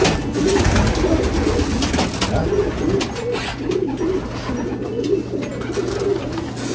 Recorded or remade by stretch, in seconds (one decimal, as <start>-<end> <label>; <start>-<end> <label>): 0.0-6.7 recorded